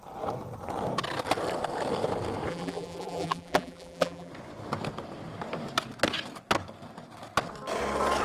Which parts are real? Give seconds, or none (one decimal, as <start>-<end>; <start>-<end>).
0.0-2.5; 4.3-8.2

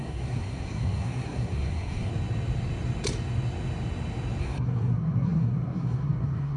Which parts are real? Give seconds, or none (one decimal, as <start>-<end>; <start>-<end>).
2.1-4.4

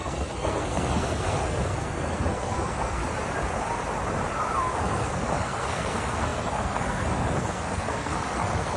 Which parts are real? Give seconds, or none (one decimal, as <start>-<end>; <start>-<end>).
3.0-4.8

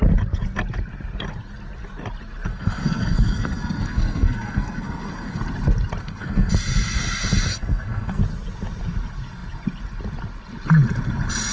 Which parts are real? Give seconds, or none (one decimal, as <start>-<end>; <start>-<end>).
0.0-2.5; 5.4-6.0; 6.5-7.5; 8.2-11.5

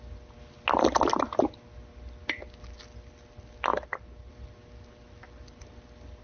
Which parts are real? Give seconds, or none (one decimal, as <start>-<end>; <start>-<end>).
0.0-6.2

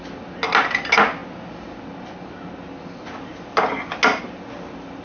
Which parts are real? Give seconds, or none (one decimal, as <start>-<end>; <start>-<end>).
0.0-5.0

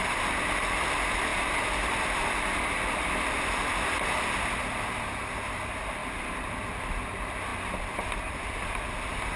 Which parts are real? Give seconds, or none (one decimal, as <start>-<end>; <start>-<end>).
0.0-1.3; 3.6-6.0; 6.7-9.4